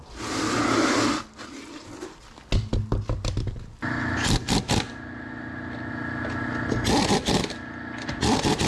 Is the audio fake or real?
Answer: real